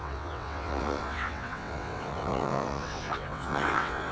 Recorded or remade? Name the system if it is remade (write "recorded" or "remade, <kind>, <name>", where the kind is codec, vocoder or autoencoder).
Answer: remade, vocoder, WaveNeXt